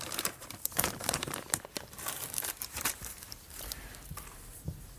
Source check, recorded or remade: remade